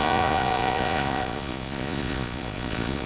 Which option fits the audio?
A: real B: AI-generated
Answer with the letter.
B